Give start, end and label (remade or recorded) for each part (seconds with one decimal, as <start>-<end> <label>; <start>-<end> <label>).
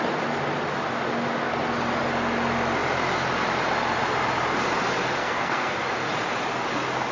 0.0-5.2 recorded; 5.2-5.8 remade; 5.8-7.1 recorded